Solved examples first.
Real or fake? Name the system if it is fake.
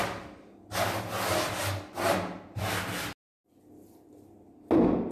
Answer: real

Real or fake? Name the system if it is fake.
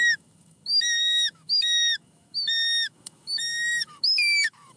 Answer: fake, autoencoder, DAC-VAE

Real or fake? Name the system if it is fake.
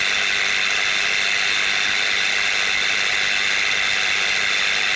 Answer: real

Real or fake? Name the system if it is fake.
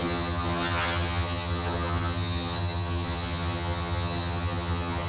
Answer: fake, vocoder, HiFi-GAN